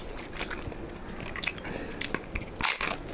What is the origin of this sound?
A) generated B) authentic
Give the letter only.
B